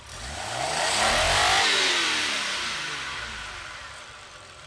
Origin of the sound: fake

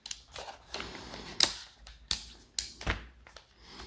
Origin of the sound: real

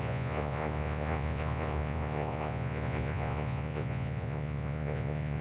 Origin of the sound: fake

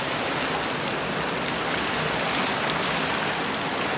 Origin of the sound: real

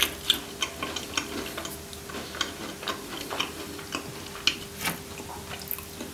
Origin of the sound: real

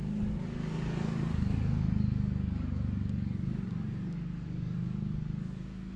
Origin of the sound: fake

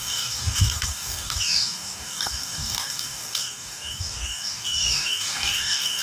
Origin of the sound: fake